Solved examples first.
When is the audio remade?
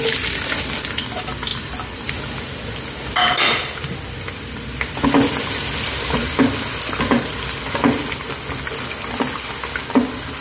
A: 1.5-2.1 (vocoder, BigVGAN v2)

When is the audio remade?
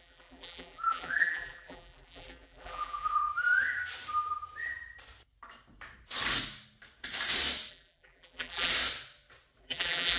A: 0.0-3.3 (vocoder, BigVGAN v2); 7.7-8.7; 9.6-10.2